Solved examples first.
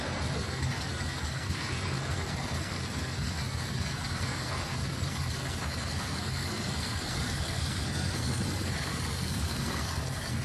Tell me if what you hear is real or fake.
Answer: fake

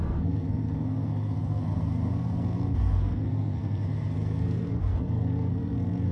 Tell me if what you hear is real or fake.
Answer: fake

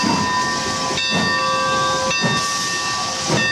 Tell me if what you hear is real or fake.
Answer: real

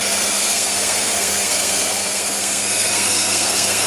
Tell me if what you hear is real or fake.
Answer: fake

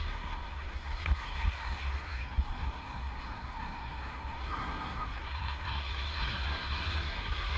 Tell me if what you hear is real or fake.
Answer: fake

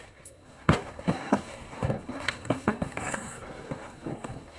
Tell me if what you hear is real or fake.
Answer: fake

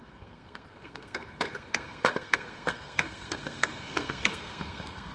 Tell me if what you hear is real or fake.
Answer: fake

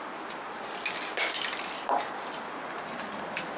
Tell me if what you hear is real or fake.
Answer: real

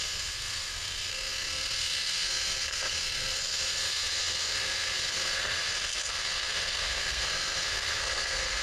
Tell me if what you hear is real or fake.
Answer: fake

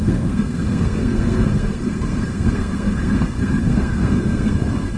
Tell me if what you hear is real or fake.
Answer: fake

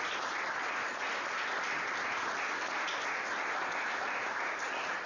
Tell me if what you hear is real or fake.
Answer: real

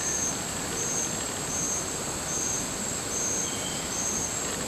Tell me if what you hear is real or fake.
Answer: real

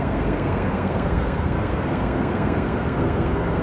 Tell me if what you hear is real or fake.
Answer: fake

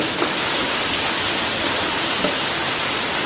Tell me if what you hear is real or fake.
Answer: real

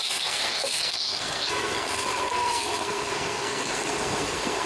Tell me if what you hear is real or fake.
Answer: fake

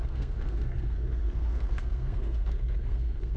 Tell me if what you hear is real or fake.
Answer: fake